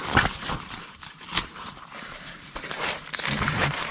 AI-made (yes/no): yes